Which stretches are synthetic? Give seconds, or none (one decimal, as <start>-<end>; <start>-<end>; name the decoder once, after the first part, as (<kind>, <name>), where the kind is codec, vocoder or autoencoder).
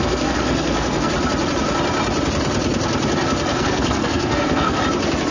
0.0-1.1 (codec, SNAC); 3.5-4.8